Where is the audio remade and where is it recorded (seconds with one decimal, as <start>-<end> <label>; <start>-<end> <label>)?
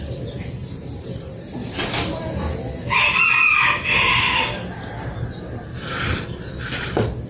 0.0-0.6 recorded; 0.6-1.7 remade; 1.7-7.3 recorded